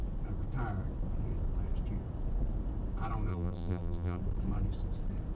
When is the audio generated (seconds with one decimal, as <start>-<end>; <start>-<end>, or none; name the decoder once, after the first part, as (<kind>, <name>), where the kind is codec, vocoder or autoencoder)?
3.3-4.2 (vocoder, BigVGAN v2)